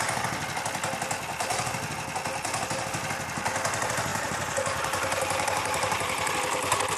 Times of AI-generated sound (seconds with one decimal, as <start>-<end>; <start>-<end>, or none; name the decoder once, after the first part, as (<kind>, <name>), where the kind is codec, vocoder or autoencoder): 4.1-6.3 (vocoder, BigVGAN v2)